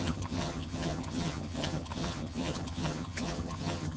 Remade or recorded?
remade